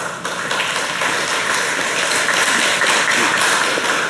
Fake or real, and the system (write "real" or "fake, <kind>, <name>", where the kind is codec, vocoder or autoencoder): real